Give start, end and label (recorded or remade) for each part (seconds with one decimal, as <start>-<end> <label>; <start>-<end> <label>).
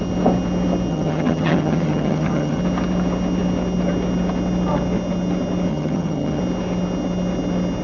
0.0-0.9 recorded; 0.9-2.6 remade; 2.6-5.7 recorded; 5.7-6.4 remade; 6.4-7.8 recorded